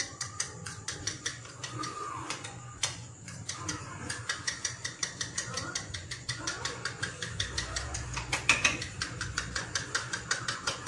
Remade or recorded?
remade